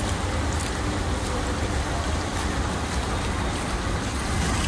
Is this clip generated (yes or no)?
no